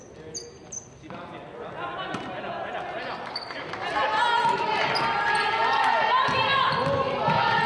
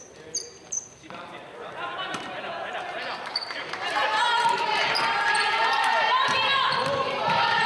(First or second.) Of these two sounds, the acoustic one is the first